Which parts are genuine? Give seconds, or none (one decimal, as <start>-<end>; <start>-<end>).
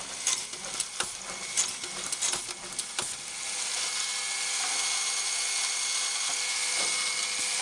0.0-7.6